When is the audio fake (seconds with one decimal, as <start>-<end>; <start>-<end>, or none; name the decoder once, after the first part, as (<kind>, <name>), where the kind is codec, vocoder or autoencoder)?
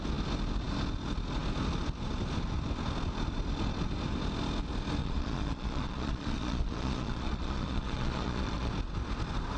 5.0-8.7 (vocoder, Vocos)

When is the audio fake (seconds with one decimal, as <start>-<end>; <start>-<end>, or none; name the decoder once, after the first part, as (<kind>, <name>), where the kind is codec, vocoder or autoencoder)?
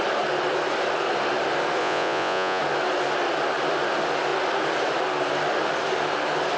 1.8-2.6 (vocoder, Vocos)